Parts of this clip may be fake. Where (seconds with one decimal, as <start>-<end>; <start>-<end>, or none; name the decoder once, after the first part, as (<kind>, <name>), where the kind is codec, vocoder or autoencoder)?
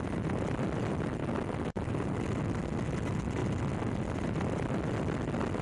none